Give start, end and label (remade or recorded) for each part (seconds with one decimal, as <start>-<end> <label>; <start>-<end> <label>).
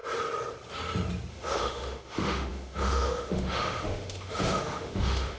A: 0.0-1.3 recorded; 1.3-5.4 remade